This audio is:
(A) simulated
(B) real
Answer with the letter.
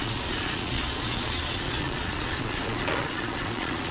A